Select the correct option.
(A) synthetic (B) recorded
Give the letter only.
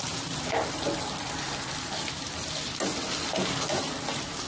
B